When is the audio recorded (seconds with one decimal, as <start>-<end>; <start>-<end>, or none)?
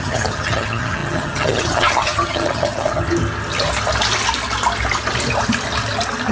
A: 3.0-6.3